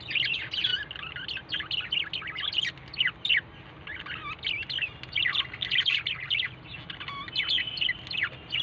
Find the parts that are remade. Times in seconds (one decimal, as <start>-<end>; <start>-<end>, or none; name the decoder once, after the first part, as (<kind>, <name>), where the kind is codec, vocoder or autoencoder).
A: none